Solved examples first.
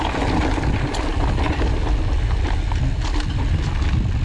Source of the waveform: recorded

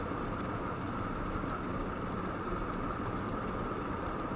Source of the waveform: recorded